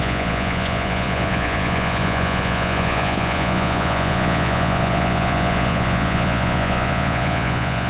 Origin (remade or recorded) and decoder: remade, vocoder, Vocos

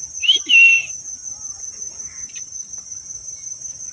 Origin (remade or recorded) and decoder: recorded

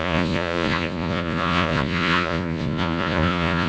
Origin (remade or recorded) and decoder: remade, vocoder, Vocos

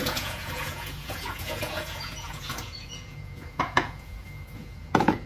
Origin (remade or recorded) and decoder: remade, vocoder, Vocos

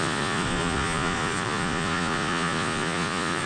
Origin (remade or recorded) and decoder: remade, vocoder, Vocos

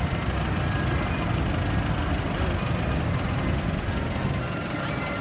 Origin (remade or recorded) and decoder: recorded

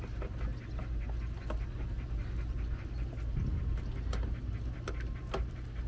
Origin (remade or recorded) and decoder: recorded